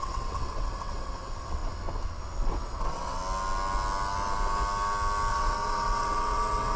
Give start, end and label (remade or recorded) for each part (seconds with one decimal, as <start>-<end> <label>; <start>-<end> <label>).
0.0-1.6 remade; 1.6-2.5 recorded; 2.5-3.2 remade; 3.2-5.3 recorded; 5.3-6.8 remade

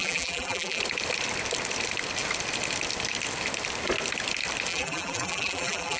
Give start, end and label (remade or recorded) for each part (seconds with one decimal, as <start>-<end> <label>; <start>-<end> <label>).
0.0-0.8 remade; 0.8-4.7 recorded; 4.7-6.0 remade